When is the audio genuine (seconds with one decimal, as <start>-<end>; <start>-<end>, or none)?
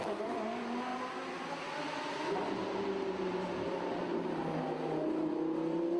0.0-6.0